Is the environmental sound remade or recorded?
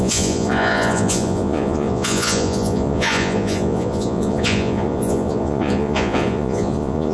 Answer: remade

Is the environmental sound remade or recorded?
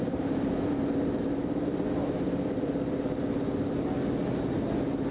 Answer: remade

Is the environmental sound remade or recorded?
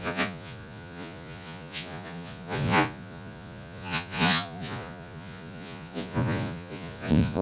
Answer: remade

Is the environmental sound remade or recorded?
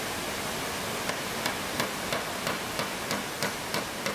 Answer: recorded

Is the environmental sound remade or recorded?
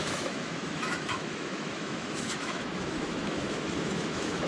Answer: remade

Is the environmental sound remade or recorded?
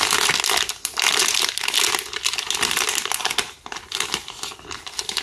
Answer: recorded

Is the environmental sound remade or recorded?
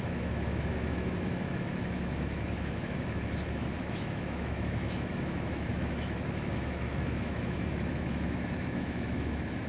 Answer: remade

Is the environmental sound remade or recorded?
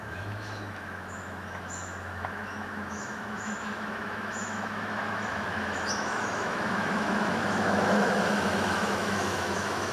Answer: remade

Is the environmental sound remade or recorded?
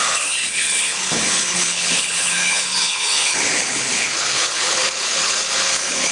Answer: remade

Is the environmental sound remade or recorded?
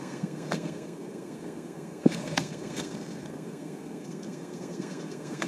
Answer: remade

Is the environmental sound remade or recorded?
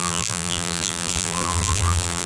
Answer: remade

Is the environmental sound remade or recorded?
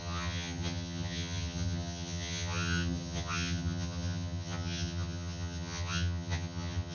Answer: remade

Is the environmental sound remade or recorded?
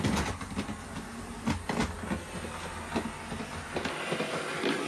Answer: recorded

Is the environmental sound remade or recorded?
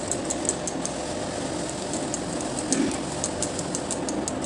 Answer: recorded